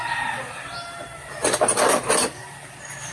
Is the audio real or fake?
real